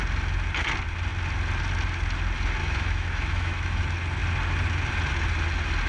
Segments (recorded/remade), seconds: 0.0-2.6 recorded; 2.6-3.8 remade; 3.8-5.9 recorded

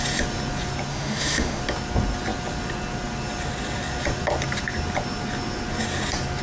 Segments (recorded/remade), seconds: 0.0-0.9 recorded; 0.9-1.6 remade; 1.6-6.4 recorded